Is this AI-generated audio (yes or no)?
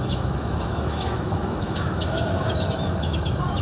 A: yes